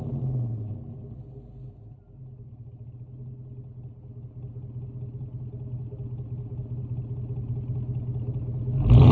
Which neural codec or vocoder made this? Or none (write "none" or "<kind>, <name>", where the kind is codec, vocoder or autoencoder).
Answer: none